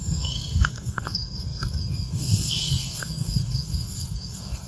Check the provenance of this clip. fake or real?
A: fake